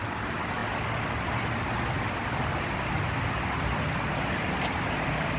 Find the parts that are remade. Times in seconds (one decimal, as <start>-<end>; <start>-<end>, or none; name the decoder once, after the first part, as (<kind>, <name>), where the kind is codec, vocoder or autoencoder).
none